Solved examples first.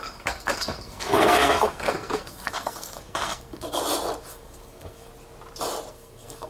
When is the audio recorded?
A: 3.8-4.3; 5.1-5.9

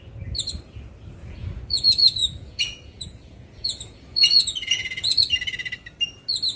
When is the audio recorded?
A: 0.0-1.2; 5.2-6.6